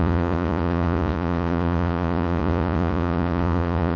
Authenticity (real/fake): fake